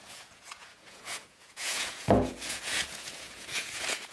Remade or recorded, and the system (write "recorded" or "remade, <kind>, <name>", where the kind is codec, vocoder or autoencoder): remade, vocoder, Vocos